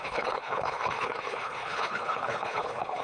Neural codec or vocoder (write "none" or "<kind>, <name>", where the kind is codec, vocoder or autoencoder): codec, HILCodec